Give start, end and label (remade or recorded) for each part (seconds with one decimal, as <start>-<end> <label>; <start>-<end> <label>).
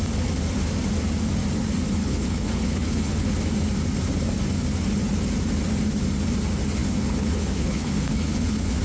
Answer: 0.0-2.0 recorded; 2.0-3.3 remade; 3.3-6.8 recorded; 6.8-8.8 remade